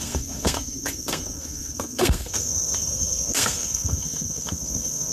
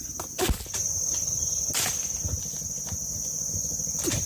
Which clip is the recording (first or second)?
second